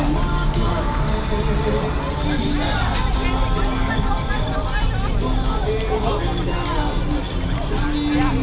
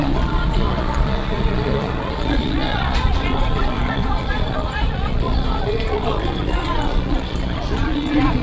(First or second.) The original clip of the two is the first